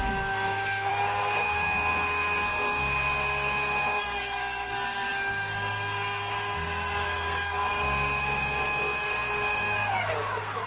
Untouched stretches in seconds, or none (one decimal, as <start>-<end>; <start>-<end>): none